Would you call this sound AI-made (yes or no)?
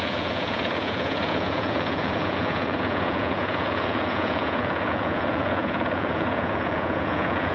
yes